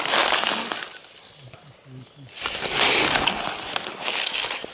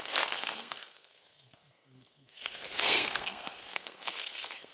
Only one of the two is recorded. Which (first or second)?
first